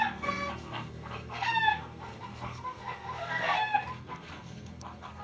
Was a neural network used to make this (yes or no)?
yes